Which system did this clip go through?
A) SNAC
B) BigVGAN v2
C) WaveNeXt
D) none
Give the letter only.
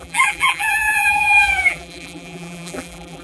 B